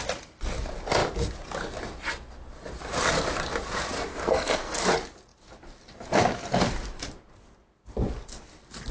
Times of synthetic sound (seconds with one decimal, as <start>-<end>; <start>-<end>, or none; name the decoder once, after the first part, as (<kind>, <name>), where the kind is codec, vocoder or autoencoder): 4.1-4.8 (codec, SNAC)